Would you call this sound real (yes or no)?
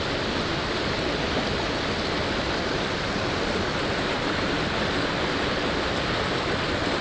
yes